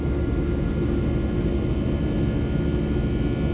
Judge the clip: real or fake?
real